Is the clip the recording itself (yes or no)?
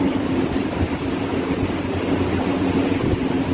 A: no